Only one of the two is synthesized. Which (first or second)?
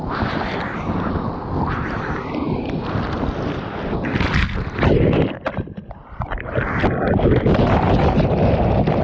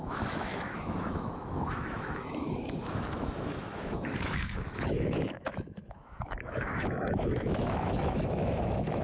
second